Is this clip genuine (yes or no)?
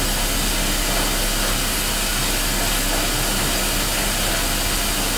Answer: yes